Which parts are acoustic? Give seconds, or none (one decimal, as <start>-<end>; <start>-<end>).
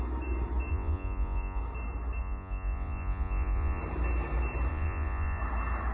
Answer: 0.0-0.7; 1.6-2.2; 3.8-4.7; 5.4-5.9